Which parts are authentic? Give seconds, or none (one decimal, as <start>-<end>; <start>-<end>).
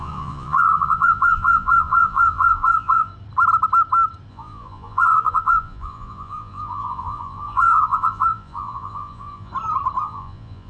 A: 3.1-4.3; 9.5-10.0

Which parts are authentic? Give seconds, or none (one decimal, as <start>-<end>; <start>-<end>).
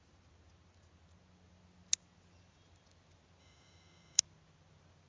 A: 0.0-3.4; 4.2-5.1